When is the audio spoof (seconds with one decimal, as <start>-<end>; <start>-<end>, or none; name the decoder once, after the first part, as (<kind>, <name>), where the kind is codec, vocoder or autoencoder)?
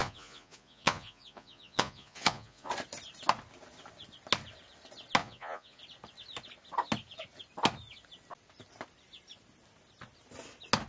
0.0-2.7 (vocoder, Vocos); 5.2-5.8